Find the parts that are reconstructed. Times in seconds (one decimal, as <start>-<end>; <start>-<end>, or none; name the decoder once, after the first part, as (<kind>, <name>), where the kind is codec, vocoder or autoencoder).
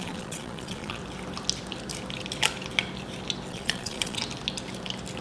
0.0-1.0 (vocoder, Vocos); 3.5-4.2